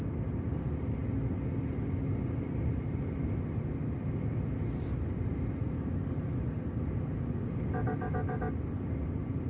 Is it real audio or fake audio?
real